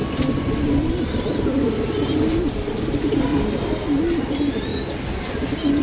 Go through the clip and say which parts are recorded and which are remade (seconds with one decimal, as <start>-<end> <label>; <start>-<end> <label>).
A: 0.0-2.5 remade; 2.5-3.3 recorded; 3.3-4.0 remade; 4.0-4.7 recorded; 4.7-5.8 remade